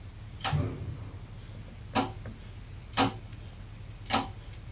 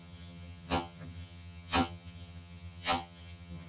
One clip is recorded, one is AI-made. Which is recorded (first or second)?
first